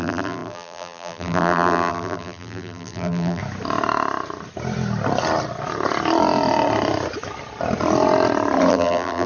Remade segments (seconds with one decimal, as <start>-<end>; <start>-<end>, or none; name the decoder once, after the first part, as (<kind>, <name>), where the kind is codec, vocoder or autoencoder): 0.0-3.4 (vocoder, BigVGAN v2); 8.7-9.3